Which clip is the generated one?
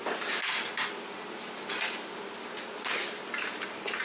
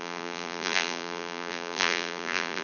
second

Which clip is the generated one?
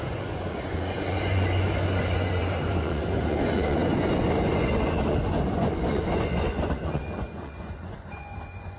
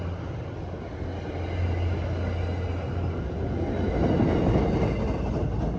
first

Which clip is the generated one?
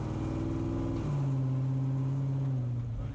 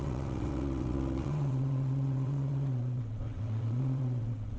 second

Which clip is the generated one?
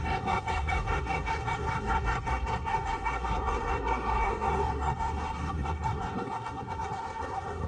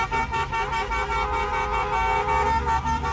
first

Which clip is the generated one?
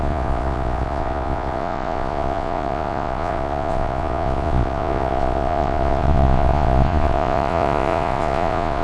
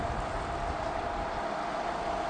first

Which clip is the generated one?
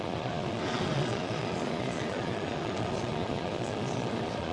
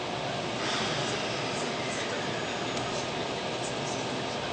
first